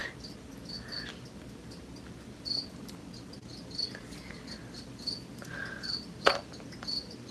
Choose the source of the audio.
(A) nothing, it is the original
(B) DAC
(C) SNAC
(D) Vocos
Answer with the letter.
A